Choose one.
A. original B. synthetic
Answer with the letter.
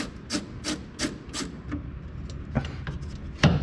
A